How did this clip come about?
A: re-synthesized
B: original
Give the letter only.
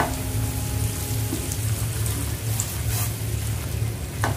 B